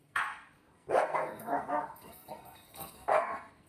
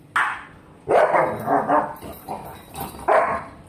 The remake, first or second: first